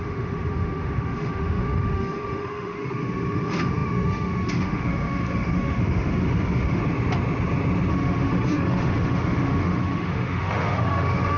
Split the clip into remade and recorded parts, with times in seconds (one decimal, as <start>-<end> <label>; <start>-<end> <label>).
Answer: 0.0-6.8 remade; 6.8-7.9 recorded; 7.9-11.4 remade